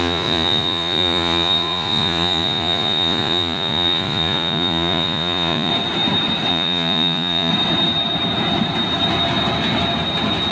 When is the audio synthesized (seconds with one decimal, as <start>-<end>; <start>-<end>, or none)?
0.0-5.7; 6.5-7.5